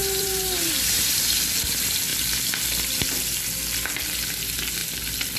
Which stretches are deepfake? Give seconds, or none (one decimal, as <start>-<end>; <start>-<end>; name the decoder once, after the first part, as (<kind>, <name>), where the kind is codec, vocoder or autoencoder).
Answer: 0.0-1.2 (vocoder, BigVGAN v2)